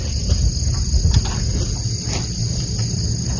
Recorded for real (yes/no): yes